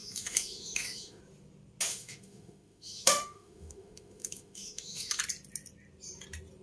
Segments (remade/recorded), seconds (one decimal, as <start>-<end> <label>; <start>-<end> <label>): 0.0-1.2 remade; 1.2-1.9 recorded; 1.9-5.2 remade; 5.2-6.6 recorded